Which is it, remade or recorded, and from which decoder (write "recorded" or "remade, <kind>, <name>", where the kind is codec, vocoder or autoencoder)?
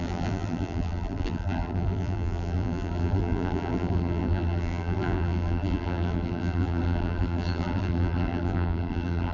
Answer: remade, vocoder, BigVGAN v2